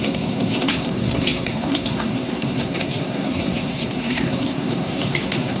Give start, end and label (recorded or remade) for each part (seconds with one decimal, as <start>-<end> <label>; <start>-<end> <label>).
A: 0.0-5.6 remade